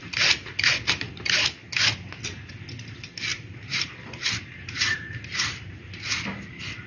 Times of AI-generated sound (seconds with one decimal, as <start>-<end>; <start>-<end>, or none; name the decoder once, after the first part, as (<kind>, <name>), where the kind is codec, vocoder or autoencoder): 3.3-5.2 (vocoder, BigVGAN v2)